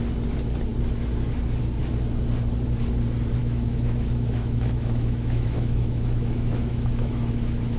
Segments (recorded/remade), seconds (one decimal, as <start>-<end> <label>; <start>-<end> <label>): 0.0-3.4 recorded; 3.4-7.8 remade